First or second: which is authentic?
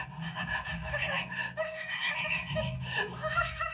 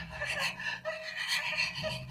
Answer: second